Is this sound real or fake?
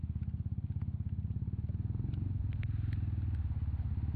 real